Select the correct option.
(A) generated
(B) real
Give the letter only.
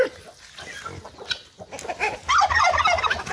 B